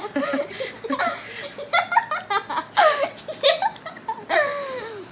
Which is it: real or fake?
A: real